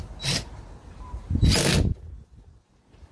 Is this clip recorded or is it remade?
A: recorded